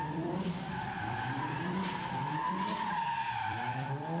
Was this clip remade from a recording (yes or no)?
yes